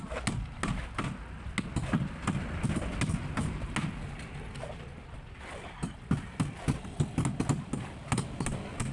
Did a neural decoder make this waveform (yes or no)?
no